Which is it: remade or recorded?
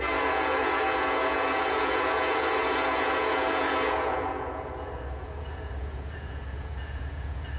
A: remade